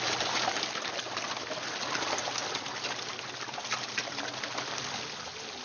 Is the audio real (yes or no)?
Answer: yes